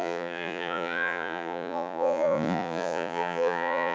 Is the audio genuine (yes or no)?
no